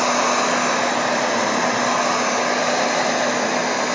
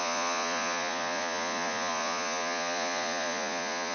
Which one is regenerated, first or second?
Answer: second